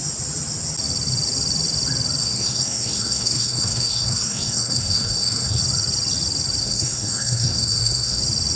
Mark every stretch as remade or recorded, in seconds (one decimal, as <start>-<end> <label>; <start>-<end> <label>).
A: 0.0-2.2 recorded; 2.2-5.6 remade; 5.6-6.6 recorded; 6.6-8.2 remade; 8.2-8.6 recorded